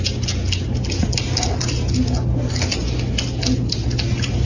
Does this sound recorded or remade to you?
recorded